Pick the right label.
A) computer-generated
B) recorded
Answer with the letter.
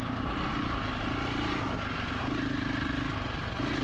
B